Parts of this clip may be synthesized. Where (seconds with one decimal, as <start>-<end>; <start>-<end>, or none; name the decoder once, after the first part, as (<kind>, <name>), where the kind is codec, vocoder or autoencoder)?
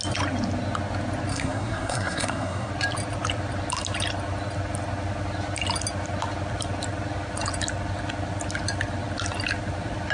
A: 1.3-2.7 (codec, SNAC)